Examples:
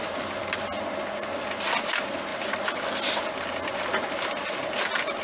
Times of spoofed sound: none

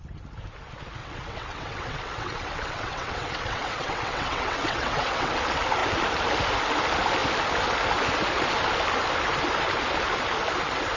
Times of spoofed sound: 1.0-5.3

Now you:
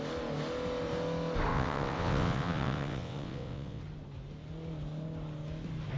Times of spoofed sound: 1.5-3.8

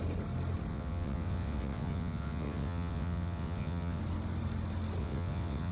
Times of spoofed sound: 0.7-4.0; 5.0-5.7